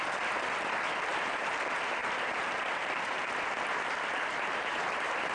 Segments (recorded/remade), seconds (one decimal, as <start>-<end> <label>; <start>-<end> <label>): 0.0-1.1 recorded; 1.1-1.6 remade; 1.6-2.0 recorded; 2.0-5.3 remade